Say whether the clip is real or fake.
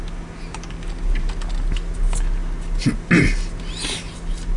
real